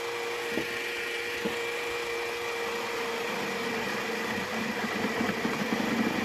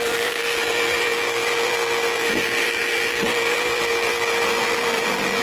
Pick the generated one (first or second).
second